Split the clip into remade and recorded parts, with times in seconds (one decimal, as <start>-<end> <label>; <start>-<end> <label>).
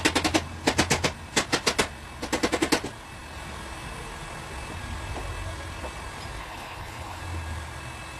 0.0-6.4 recorded; 6.4-7.2 remade; 7.2-8.2 recorded